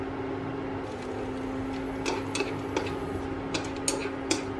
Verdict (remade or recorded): recorded